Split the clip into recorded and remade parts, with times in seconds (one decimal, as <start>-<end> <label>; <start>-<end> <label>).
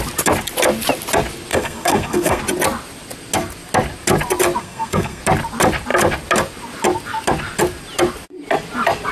0.0-1.5 recorded; 1.5-2.4 remade; 2.4-4.6 recorded; 4.6-5.2 remade; 5.2-9.1 recorded